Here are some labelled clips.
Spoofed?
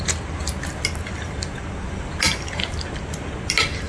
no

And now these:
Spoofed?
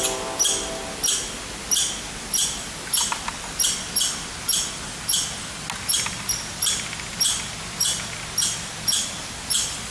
no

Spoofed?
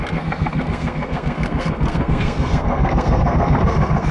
yes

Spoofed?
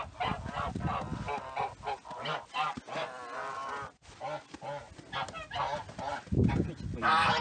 no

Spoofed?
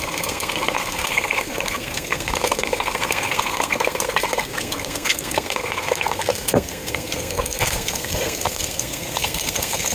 yes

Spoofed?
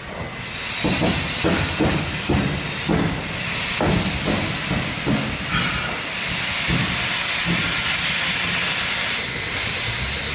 no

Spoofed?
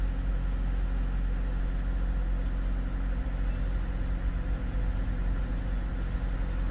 no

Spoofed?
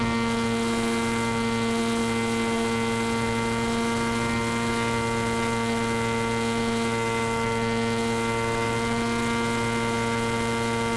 no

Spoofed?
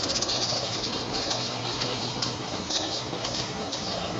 yes